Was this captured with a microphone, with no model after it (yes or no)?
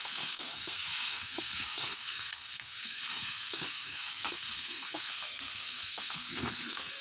no